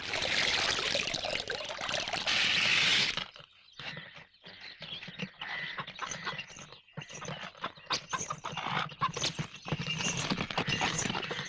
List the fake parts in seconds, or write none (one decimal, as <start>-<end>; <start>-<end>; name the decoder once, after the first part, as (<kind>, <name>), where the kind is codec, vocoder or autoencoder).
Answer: none